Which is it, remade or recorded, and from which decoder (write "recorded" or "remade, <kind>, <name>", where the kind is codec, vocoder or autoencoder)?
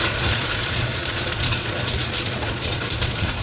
remade, vocoder, Vocos